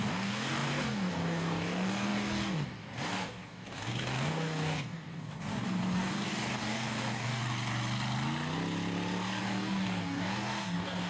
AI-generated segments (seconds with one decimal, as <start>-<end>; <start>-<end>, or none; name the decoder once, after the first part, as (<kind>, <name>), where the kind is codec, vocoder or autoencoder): 0.0-7.4 (codec, DAC); 9.4-11.1

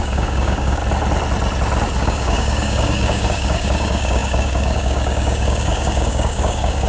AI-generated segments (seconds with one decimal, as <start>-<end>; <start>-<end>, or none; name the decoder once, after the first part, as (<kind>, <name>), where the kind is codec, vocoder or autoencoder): 0.0-0.8 (codec, DAC); 2.0-6.9

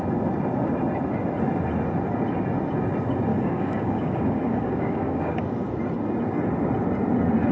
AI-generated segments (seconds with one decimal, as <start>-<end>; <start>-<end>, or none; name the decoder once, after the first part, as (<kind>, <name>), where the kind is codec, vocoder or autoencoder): 3.3-5.5 (codec, DAC)

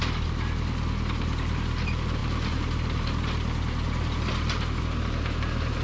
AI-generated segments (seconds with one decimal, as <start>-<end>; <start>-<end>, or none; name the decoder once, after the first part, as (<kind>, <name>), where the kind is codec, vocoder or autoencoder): none

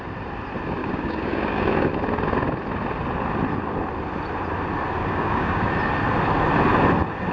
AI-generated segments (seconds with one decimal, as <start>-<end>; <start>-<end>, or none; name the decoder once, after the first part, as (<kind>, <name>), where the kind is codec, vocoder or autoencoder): 0.8-1.9 (codec, DAC); 5.0-5.7